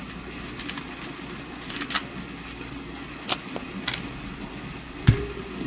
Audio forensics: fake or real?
real